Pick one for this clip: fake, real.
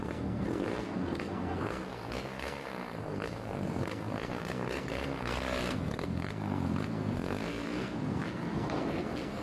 fake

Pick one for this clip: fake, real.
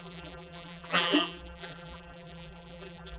fake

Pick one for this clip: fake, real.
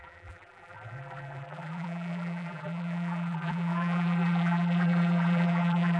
fake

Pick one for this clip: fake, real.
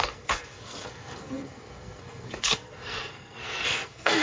fake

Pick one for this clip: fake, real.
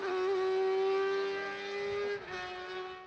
real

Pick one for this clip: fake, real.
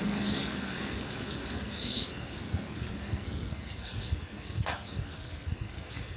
fake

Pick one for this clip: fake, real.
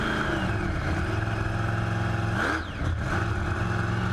real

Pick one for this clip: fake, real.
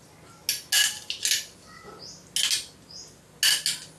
real